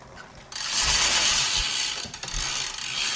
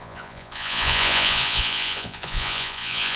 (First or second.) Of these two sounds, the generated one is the second